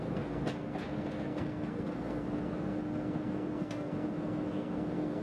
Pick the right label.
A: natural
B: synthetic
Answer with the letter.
B